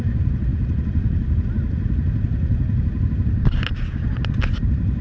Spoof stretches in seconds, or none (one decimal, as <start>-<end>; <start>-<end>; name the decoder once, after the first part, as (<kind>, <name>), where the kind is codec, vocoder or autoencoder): none